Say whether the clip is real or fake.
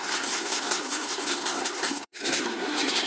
fake